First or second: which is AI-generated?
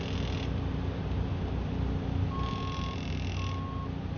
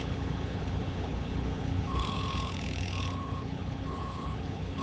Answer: second